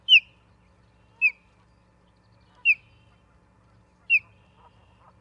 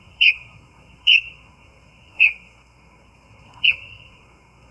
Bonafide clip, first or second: first